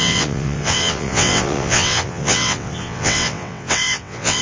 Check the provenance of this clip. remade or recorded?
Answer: remade